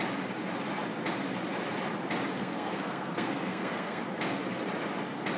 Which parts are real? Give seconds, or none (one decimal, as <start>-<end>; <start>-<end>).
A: 0.0-2.4; 4.0-5.4